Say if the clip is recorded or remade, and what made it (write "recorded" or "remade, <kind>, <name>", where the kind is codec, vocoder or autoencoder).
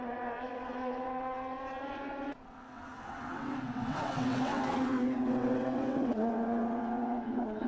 remade, vocoder, WaveNeXt